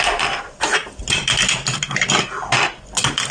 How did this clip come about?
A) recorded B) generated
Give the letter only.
A